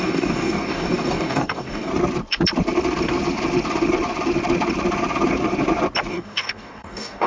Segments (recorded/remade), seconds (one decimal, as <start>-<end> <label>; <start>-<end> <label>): 0.0-1.9 remade; 1.9-6.1 recorded; 6.1-7.3 remade